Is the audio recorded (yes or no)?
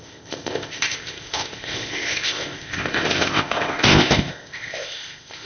no